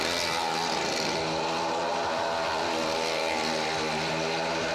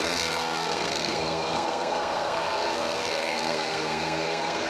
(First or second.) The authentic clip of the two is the first